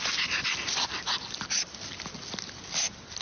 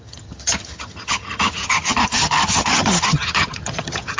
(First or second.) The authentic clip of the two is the first